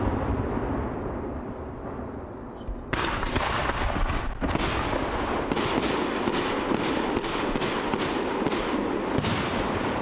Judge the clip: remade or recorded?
recorded